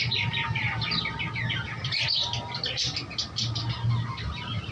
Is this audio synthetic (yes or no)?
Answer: no